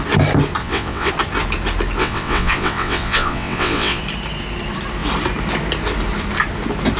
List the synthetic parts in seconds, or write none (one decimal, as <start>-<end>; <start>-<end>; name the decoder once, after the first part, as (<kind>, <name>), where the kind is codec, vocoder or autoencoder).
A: 0.6-1.1 (vocoder, WaveNeXt); 2.0-4.0